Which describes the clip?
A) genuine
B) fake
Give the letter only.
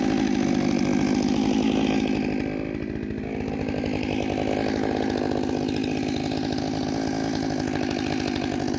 A